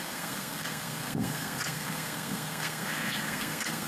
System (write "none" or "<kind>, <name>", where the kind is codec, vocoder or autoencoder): codec, SNAC